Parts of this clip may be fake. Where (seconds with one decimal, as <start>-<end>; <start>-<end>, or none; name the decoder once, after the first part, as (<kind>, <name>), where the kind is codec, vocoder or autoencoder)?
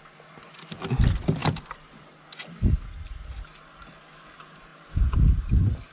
none